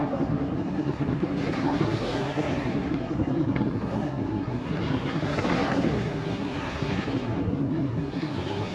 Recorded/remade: remade